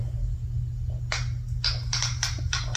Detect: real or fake real